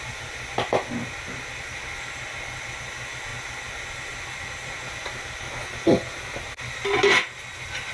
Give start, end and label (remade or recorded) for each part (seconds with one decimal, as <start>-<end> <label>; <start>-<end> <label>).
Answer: 0.0-7.9 recorded